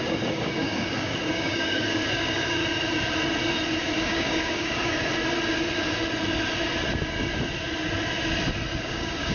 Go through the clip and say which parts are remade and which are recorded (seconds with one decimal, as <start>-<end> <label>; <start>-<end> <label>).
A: 0.0-2.6 remade; 2.6-4.0 recorded; 4.0-5.1 remade; 5.1-8.8 recorded; 8.8-9.3 remade